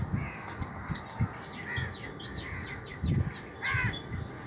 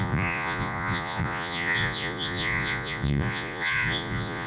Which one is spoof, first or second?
second